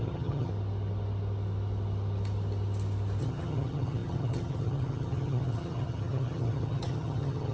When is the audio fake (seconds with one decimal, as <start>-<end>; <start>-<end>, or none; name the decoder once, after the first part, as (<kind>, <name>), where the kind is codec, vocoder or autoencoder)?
0.0-0.5 (vocoder, HiFi-GAN); 3.2-7.5

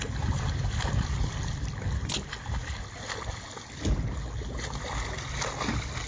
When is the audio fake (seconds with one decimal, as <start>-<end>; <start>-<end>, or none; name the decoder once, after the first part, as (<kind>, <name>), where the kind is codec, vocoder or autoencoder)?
none

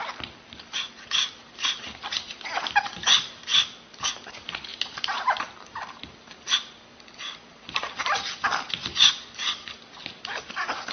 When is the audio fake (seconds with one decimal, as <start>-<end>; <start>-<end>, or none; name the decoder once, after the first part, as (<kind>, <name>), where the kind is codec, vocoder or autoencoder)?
none

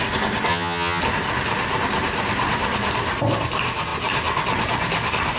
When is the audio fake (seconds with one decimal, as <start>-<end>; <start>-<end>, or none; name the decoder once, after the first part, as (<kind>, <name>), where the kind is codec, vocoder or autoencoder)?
0.5-1.0 (vocoder, HiFi-GAN)

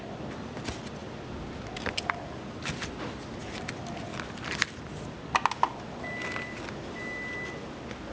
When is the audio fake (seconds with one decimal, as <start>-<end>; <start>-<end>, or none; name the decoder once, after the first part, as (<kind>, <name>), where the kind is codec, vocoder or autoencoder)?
none